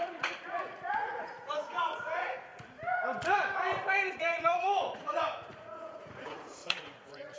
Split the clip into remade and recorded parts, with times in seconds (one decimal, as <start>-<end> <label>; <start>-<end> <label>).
0.0-2.5 remade; 2.5-4.2 recorded; 4.2-7.4 remade